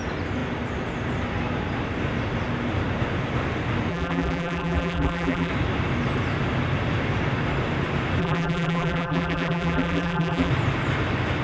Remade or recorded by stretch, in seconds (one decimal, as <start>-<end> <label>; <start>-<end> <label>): 0.0-3.9 recorded; 3.9-5.5 remade; 5.5-8.2 recorded; 8.2-10.5 remade; 10.5-11.4 recorded